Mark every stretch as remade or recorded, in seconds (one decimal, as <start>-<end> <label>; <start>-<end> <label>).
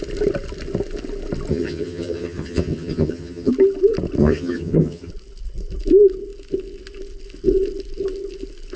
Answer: 0.0-1.5 recorded; 1.5-3.5 remade; 3.5-4.2 recorded; 4.2-5.1 remade; 5.1-8.8 recorded